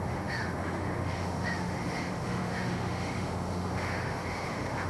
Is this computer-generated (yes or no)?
yes